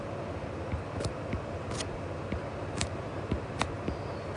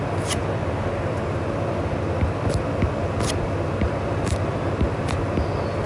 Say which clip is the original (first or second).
second